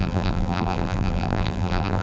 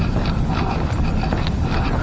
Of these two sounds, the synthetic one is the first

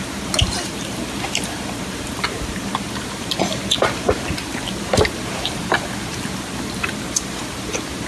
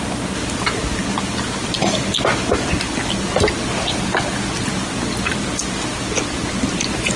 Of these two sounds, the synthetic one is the first